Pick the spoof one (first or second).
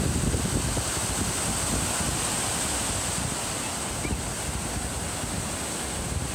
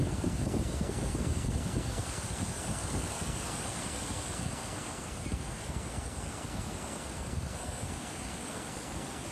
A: second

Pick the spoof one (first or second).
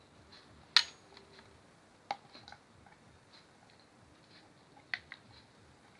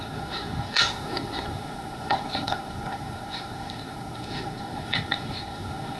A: second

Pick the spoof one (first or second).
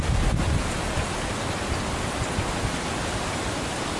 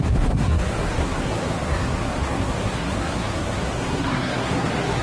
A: second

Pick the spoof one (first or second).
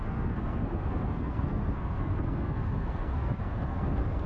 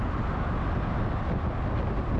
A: first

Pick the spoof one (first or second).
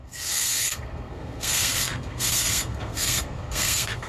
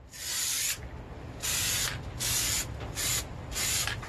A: first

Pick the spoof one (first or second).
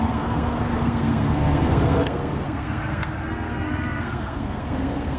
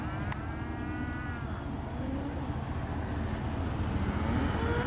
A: first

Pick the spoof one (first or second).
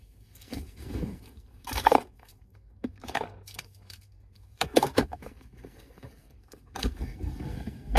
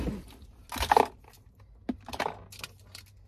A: first